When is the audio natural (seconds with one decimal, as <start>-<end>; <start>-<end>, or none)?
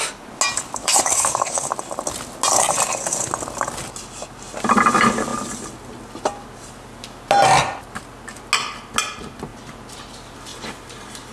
0.0-0.8; 1.7-11.3